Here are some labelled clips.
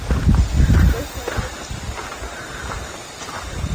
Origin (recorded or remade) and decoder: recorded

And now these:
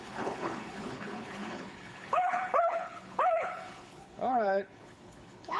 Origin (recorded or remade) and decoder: remade, codec, HILCodec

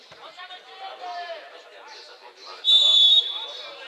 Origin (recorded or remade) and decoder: remade, vocoder, BigVGAN v2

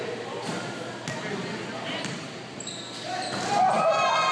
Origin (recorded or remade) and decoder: recorded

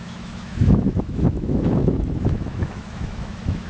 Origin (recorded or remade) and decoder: remade, autoencoder, DAC-VAE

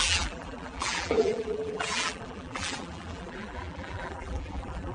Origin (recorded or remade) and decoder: remade, vocoder, BigVGAN v2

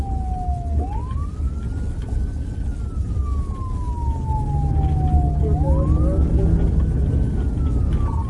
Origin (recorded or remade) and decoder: recorded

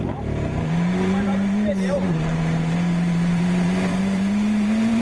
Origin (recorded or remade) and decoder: remade, vocoder, BigVGAN v2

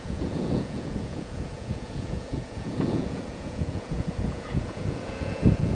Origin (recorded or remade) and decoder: remade, vocoder, Vocos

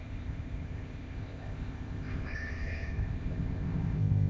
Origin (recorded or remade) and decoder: remade, codec, ZipCodec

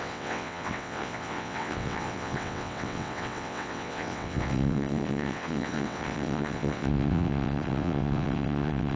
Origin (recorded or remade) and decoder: remade, vocoder, WaveNeXt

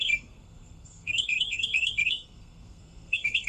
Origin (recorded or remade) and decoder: remade, codec, SNAC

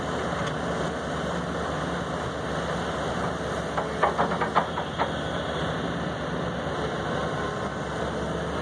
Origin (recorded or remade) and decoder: recorded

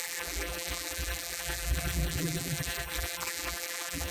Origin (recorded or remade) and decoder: remade, vocoder, BigVGAN v2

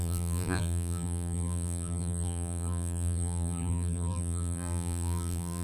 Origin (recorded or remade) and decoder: remade, vocoder, BigVGAN v2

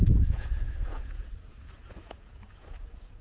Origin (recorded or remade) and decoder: remade, vocoder, Vocos